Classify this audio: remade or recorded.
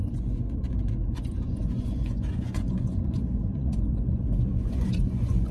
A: remade